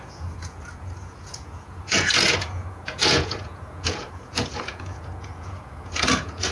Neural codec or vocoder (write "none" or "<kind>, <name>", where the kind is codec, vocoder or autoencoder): vocoder, Vocos